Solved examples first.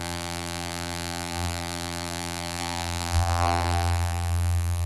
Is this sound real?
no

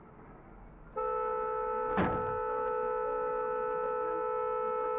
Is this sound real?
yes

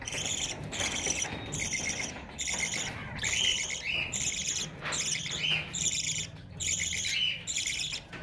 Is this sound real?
yes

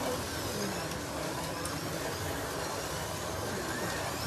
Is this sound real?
yes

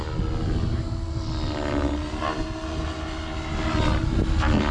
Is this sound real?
yes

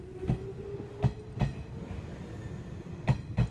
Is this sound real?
yes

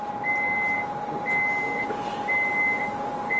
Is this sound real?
yes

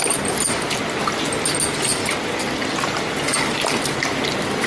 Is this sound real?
yes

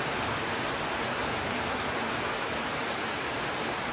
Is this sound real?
no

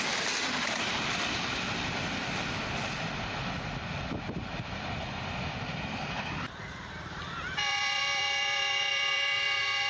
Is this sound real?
no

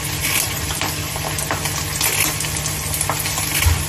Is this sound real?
yes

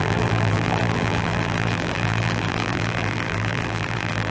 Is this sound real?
no